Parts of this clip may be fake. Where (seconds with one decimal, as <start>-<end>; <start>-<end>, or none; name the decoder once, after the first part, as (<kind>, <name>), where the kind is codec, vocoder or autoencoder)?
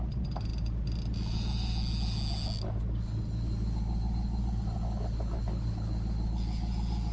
none